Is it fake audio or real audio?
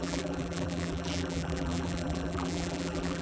fake